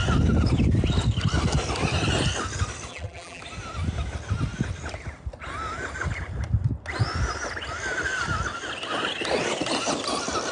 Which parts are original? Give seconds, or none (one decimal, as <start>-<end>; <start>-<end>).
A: 0.0-2.9; 3.4-10.5